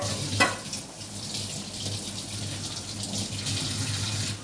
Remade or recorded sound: recorded